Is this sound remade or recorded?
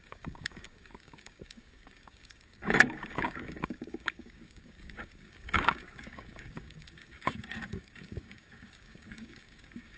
remade